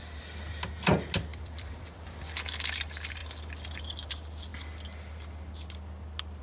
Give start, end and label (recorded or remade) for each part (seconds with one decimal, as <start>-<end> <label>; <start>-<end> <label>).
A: 0.0-1.3 recorded; 1.3-2.3 remade; 2.3-6.4 recorded